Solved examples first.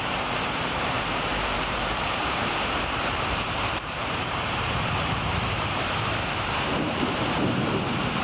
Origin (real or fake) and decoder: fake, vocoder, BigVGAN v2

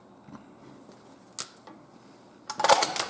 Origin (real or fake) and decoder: real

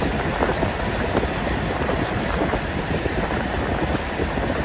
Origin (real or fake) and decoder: real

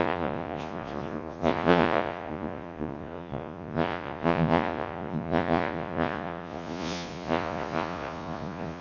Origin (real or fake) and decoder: fake, vocoder, Vocos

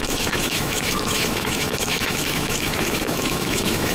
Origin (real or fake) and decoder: fake, autoencoder, DAC-VAE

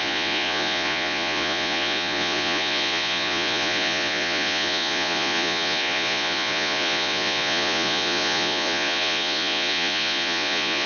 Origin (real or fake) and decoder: fake, vocoder, Vocos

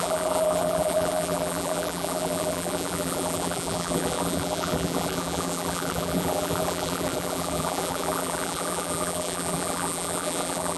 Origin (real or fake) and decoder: fake, vocoder, BigVGAN v2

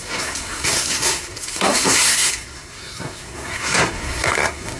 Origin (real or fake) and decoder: fake, codec, SNAC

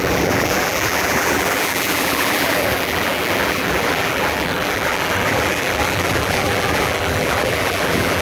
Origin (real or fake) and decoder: fake, vocoder, BigVGAN v2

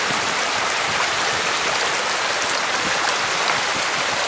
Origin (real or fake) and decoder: real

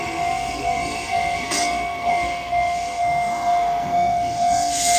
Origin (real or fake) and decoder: fake, codec, SNAC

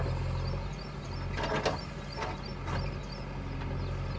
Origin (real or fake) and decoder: real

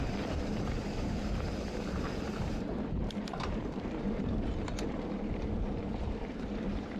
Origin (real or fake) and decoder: fake, vocoder, BigVGAN v2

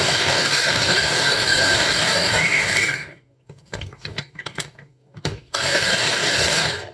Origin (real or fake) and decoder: fake, codec, DAC